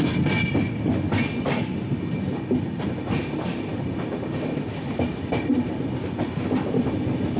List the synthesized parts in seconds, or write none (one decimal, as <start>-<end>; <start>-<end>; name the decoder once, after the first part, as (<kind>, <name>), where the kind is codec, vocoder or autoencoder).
none